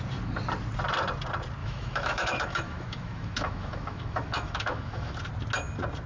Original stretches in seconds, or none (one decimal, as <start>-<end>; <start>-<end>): 0.0-1.6; 5.2-6.1